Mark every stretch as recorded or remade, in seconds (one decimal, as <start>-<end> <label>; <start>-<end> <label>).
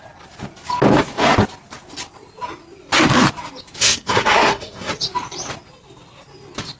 0.0-3.8 recorded; 3.8-4.9 remade; 4.9-6.8 recorded